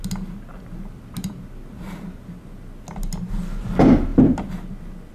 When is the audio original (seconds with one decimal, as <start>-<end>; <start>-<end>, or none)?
0.0-5.1